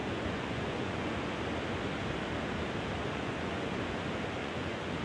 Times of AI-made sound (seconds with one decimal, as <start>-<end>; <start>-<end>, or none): 0.0-1.4; 3.0-4.0; 4.4-5.0